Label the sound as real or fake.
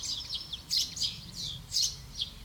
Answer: real